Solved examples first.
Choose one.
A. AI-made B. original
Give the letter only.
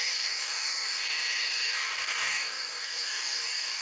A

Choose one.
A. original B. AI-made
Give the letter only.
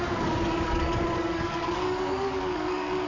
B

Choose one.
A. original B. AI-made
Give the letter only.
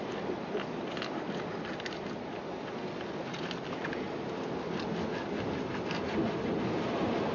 A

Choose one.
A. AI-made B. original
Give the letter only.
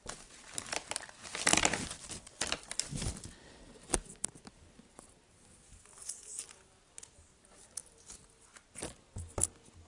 B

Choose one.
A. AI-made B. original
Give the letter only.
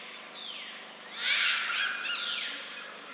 B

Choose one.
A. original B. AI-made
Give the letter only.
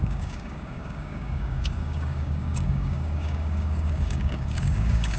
B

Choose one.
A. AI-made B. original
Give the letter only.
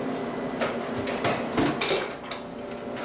B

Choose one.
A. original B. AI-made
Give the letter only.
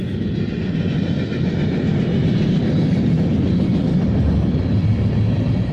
A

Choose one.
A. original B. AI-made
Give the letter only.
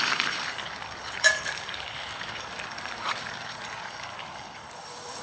B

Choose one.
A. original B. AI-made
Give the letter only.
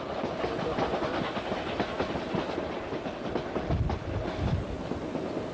A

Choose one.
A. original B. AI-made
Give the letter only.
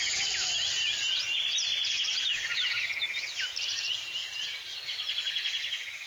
A